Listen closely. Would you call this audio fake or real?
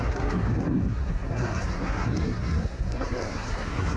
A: fake